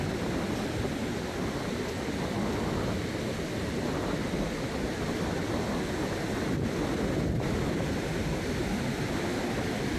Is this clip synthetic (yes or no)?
no